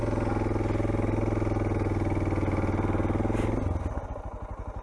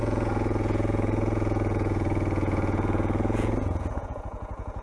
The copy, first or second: second